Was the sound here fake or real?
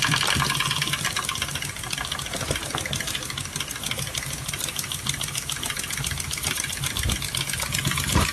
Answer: real